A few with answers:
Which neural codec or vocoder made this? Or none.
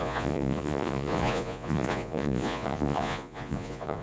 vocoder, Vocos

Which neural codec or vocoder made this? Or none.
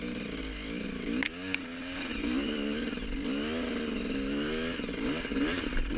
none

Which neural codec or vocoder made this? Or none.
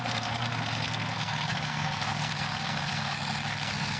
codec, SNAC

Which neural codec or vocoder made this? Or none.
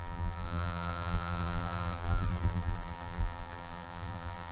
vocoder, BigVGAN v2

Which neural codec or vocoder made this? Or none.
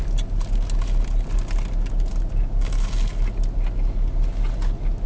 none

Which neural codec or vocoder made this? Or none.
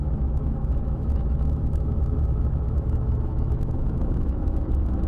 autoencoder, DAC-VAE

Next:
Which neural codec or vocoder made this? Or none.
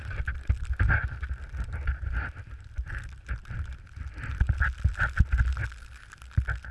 none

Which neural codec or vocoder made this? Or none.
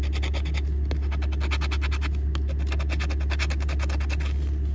none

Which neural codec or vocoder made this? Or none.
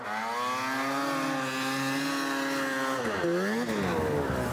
none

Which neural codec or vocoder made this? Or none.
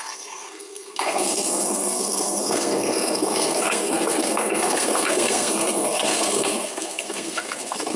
codec, SNAC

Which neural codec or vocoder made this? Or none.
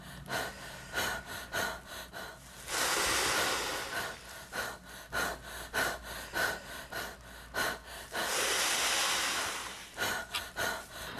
none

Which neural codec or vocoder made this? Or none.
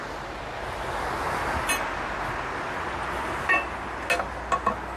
none